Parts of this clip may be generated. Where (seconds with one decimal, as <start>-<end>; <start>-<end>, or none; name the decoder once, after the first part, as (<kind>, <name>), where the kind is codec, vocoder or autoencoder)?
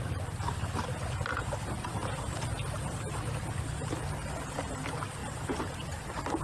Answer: 5.2-6.0 (vocoder, BigVGAN v2)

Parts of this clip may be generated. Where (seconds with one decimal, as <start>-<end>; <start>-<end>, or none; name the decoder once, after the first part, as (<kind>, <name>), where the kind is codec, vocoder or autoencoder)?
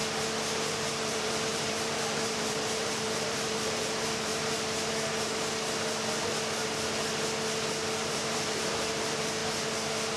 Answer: 0.7-4.3 (vocoder, BigVGAN v2); 8.0-9.4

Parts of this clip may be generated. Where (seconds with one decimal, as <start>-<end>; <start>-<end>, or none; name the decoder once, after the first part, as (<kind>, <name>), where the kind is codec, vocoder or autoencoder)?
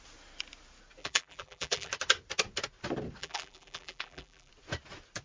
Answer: 1.0-1.9 (vocoder, BigVGAN v2); 3.2-4.5